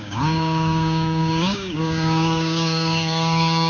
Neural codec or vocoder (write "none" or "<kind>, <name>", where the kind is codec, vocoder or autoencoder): codec, DAC